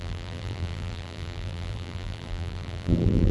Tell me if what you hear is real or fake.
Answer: fake